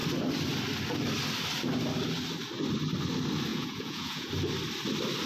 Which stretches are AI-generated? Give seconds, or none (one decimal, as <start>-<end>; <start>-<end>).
3.5-4.3